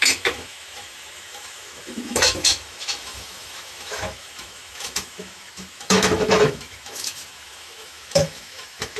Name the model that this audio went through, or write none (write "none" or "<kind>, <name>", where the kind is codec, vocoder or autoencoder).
autoencoder, DAC-VAE